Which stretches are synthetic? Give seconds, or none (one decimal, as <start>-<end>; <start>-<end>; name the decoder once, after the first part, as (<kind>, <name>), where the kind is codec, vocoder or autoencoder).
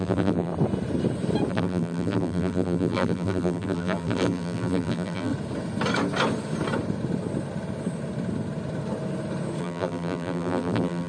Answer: 0.0-0.5 (vocoder, BigVGAN v2); 1.5-5.3; 9.6-11.1